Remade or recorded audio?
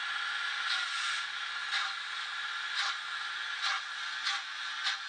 recorded